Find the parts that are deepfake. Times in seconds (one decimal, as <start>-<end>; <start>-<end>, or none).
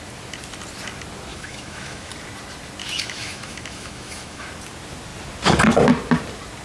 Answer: 1.3-2.1; 2.8-4.5